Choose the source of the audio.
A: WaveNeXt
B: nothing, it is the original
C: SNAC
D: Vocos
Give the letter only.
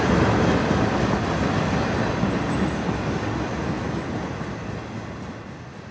B